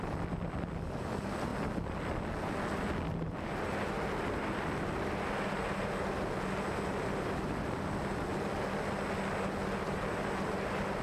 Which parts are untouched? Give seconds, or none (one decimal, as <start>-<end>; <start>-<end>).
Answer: 0.0-11.0